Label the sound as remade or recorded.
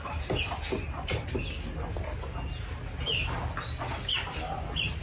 recorded